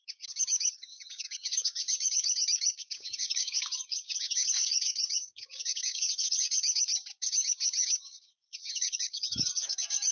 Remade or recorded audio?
remade